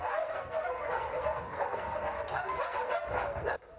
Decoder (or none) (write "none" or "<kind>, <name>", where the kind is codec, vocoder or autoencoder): codec, SNAC